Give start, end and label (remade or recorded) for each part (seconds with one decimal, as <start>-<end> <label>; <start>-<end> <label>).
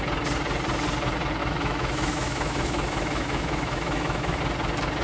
0.0-1.4 recorded; 1.4-4.4 remade; 4.4-5.0 recorded